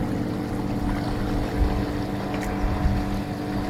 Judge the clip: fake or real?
real